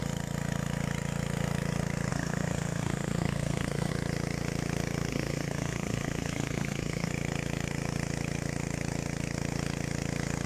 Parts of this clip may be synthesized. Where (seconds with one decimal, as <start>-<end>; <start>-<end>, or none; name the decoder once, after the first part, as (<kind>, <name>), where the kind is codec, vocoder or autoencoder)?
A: 2.1-3.9 (codec, SNAC); 5.1-7.1